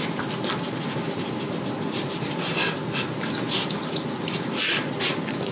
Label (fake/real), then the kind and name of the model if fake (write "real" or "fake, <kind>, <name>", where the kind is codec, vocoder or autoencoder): real